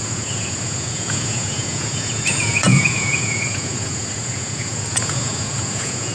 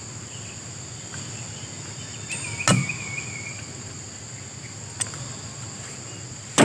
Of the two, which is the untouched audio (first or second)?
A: second